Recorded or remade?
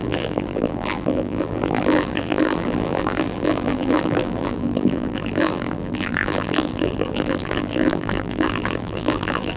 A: remade